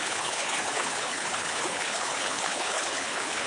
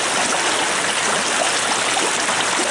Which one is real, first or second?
second